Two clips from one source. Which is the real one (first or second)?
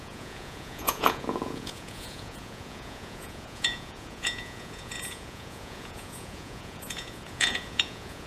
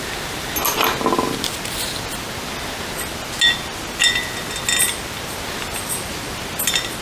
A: second